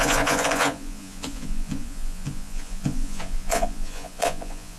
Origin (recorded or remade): remade